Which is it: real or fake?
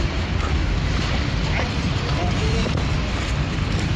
fake